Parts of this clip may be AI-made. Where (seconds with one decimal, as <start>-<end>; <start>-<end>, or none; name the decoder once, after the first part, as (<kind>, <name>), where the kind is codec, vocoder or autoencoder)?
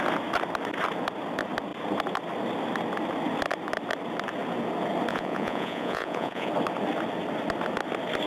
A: 5.1-6.5 (vocoder, Vocos)